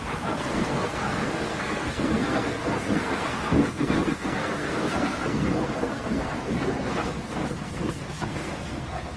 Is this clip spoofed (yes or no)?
yes